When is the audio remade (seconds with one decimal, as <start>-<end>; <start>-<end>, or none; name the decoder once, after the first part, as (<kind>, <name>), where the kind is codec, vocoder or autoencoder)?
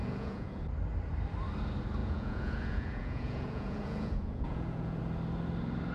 0.0-0.6 (vocoder, Vocos); 2.0-5.0